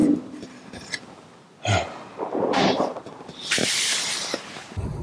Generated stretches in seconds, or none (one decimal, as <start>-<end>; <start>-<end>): 0.0-0.9; 2.5-5.0